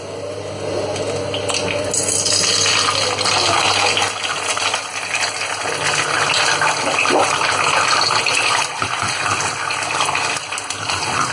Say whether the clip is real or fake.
real